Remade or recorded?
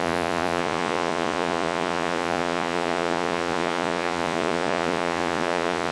remade